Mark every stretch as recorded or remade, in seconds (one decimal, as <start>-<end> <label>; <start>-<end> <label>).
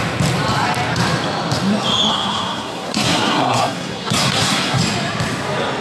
0.0-2.1 recorded; 2.1-4.8 remade; 4.8-5.8 recorded